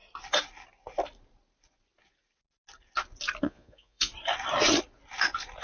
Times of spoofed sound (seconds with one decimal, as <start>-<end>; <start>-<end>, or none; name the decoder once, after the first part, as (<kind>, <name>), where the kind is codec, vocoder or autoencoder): 3.4-4.1 (vocoder, Vocos)